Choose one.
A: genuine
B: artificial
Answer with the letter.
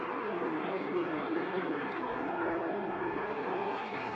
B